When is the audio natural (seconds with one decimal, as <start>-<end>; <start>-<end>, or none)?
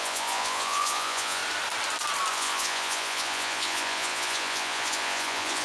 1.4-2.3